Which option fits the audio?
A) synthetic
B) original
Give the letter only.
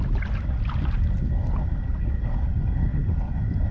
B